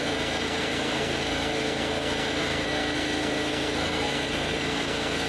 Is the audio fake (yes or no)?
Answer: yes